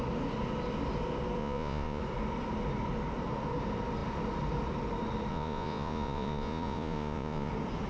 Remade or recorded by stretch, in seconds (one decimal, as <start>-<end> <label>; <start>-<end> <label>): 0.0-1.4 recorded; 1.4-2.0 remade; 2.0-5.3 recorded; 5.3-7.5 remade; 7.5-7.9 recorded